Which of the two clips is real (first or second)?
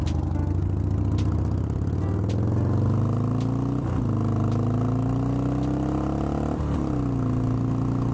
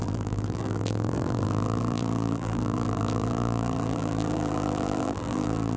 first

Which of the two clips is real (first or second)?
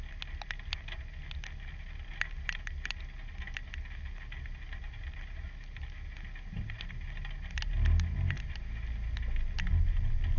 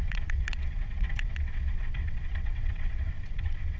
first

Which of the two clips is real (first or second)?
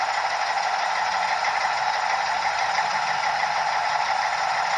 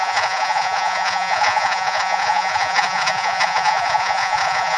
first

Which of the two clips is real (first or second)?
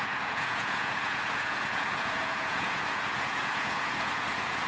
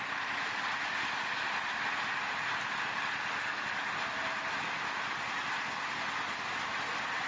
second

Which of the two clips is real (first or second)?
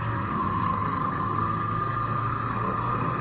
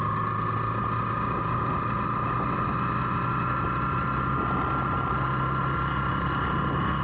second